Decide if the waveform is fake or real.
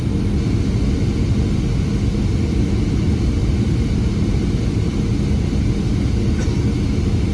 real